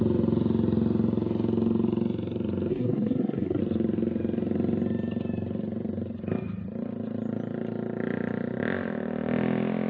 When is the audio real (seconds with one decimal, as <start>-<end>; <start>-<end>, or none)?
0.0-2.7; 3.6-9.9